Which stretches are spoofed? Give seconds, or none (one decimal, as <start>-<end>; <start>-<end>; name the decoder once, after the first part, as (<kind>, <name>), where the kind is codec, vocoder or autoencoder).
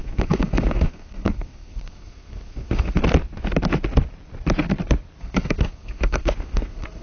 0.0-3.0 (codec, SNAC); 5.2-7.0